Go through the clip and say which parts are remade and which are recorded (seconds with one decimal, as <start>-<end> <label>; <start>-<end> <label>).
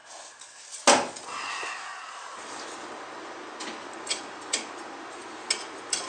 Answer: 0.0-6.1 recorded